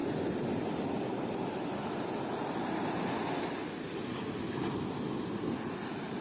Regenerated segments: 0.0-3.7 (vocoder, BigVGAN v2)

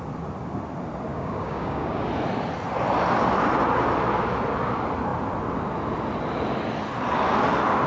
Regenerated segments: 1.1-2.1 (codec, DAC)

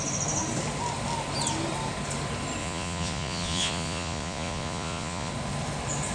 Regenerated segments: 2.6-5.3 (vocoder, Vocos)